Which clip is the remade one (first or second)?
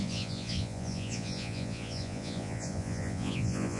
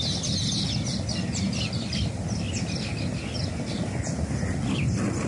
first